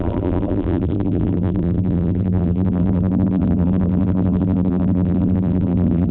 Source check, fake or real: fake